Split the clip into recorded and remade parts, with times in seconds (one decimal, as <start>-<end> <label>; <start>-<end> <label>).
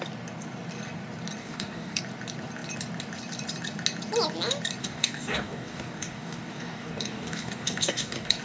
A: 0.0-1.4 recorded; 1.4-2.0 remade; 2.0-4.8 recorded; 4.8-8.4 remade